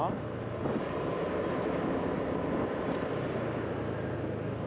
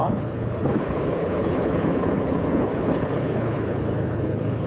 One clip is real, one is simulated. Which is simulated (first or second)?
second